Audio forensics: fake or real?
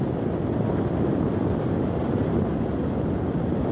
real